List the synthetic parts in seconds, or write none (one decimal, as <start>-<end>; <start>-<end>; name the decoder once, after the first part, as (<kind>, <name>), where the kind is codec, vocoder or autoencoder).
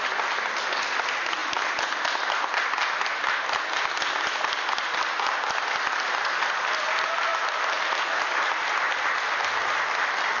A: none